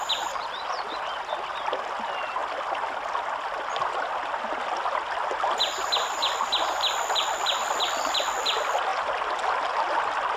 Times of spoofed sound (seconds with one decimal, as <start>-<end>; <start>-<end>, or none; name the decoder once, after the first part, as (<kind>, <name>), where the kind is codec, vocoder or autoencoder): none